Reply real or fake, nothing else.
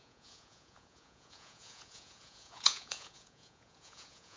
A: fake